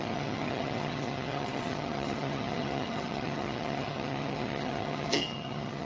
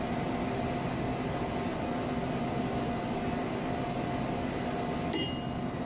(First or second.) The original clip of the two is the second